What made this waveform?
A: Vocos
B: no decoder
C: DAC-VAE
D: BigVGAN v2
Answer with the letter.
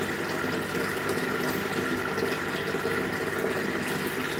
B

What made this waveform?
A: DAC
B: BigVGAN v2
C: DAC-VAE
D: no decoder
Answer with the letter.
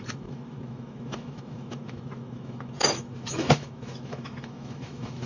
C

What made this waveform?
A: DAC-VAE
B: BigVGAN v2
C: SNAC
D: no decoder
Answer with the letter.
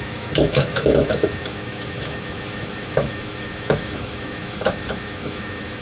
A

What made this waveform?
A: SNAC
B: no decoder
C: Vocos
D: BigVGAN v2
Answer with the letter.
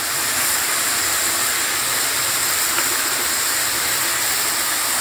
D